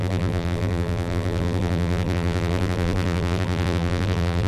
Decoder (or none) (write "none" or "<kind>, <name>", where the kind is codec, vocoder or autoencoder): vocoder, BigVGAN v2